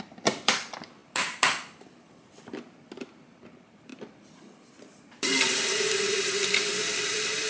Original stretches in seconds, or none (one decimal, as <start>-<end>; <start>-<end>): none

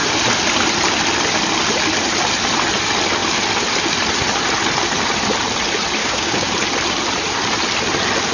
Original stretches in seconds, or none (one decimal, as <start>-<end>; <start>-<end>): 0.0-6.0; 6.5-8.3

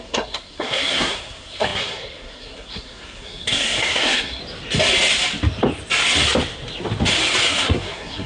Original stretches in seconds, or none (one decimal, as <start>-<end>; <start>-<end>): 4.4-7.5

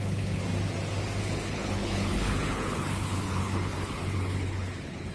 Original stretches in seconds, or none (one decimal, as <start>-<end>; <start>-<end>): 0.4-1.2

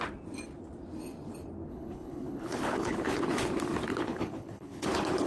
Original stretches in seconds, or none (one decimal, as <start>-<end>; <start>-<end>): 0.0-1.7; 3.2-3.9